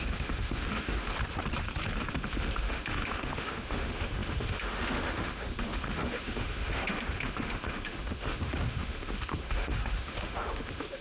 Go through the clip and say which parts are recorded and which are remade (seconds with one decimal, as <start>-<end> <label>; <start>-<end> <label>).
0.0-1.2 remade; 1.2-2.1 recorded; 2.1-11.0 remade